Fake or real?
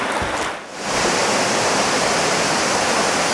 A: real